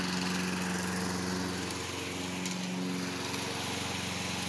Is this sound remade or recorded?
recorded